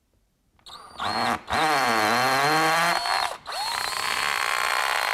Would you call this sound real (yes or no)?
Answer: yes